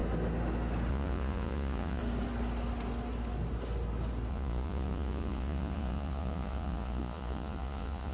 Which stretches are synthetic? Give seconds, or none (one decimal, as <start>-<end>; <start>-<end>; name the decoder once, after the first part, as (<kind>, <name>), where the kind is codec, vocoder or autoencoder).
0.9-2.0 (vocoder, Vocos); 4.3-8.1